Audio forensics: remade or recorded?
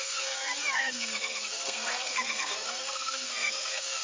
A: remade